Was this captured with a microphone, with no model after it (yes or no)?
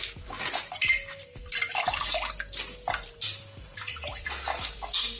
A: yes